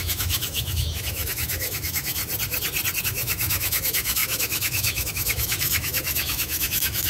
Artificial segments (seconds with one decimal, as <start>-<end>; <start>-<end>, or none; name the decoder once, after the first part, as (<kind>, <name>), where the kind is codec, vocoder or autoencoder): 0.0-2.2 (autoencoder, DAC-VAE); 3.0-7.1